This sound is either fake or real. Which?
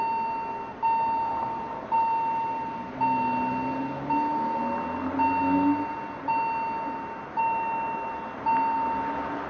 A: real